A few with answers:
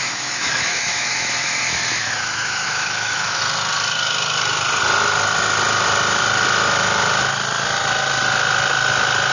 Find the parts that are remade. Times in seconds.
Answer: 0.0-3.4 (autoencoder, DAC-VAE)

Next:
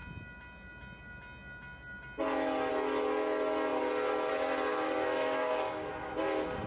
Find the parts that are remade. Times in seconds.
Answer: 4.7-5.9 (codec, DAC)

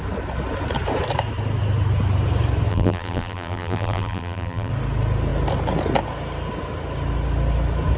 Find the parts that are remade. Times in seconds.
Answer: 2.7-4.7 (vocoder, BigVGAN v2)

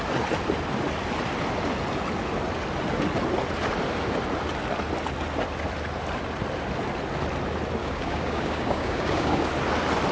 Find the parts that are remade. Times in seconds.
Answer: 7.8-9.5 (codec, DAC)

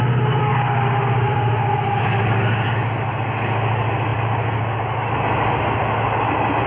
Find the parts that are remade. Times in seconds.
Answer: none

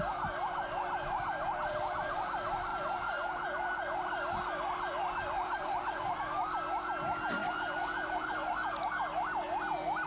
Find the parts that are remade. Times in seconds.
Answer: 2.7-6.2 (vocoder, BigVGAN v2); 7.4-8.1